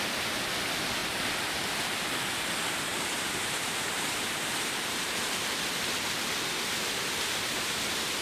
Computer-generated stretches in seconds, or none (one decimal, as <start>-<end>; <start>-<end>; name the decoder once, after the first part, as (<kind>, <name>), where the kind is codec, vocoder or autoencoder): 2.9-5.9 (vocoder, BigVGAN v2)